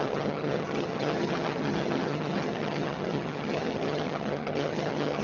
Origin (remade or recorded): remade